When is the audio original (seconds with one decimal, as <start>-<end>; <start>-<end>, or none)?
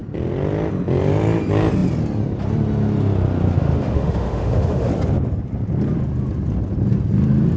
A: 0.0-3.6; 4.9-7.6